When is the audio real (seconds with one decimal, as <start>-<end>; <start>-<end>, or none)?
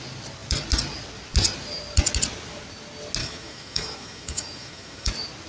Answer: 0.0-3.2; 5.1-5.5